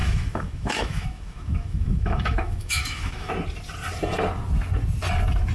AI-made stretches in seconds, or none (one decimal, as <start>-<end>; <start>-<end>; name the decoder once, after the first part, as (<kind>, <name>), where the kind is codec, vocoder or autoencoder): 0.0-3.3 (autoencoder, DAC-VAE)